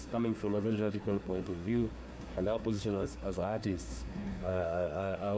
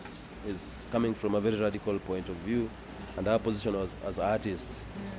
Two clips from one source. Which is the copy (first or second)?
first